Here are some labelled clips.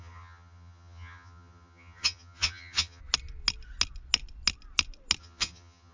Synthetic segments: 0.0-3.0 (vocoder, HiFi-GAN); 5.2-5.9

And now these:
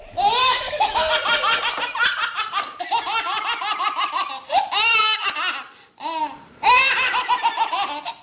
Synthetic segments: 0.4-1.1 (codec, DAC)

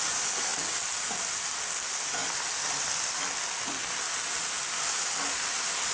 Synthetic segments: none

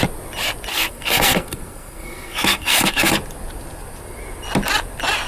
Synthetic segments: 0.7-3.1 (codec, SNAC)

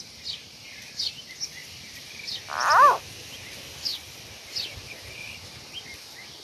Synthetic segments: 1.6-3.0 (vocoder, BigVGAN v2)